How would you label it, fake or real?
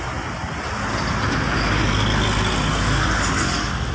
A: real